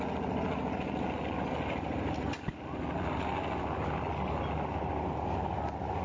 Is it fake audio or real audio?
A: real